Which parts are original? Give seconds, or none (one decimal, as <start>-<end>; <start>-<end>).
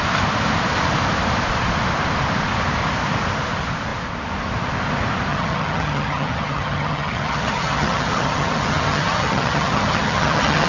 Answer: 0.0-5.3